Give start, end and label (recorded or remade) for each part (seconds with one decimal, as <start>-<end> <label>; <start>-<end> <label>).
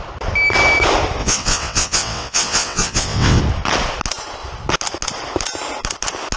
0.0-1.2 recorded; 1.2-3.4 remade; 3.4-6.4 recorded